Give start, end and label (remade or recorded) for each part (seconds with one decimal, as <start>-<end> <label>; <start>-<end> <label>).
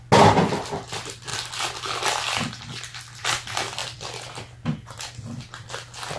0.0-6.2 recorded